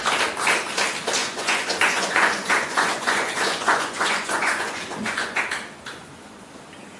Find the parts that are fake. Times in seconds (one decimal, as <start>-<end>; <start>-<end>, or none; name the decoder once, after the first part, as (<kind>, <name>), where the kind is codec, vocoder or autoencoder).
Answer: 1.2-5.4 (vocoder, Vocos); 5.9-6.5